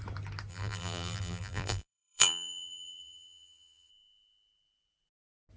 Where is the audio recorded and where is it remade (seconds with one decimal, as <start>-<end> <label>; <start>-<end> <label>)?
0.0-0.5 recorded; 0.5-3.9 remade; 3.9-5.6 recorded